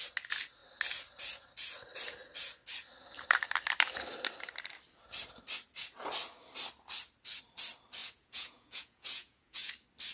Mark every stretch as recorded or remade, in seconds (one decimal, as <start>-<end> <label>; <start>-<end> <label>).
0.0-8.0 recorded; 8.0-9.7 remade; 9.7-10.1 recorded